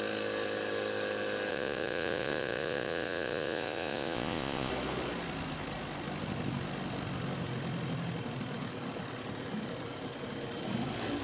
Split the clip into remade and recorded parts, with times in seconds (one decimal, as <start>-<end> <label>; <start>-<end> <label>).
0.0-1.5 recorded; 1.5-4.7 remade; 4.7-11.2 recorded